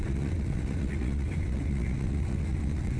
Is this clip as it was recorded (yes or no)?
no